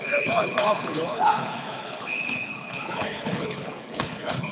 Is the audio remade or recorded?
remade